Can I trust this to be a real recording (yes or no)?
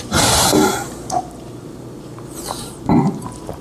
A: no